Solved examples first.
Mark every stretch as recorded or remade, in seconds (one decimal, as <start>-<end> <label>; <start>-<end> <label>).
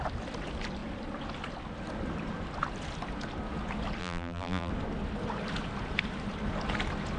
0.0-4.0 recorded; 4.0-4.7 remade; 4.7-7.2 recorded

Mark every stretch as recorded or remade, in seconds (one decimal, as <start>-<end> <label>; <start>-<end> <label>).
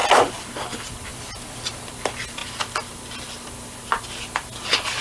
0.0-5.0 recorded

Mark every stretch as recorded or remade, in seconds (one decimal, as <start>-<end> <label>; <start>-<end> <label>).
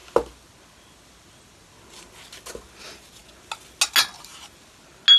0.0-5.2 recorded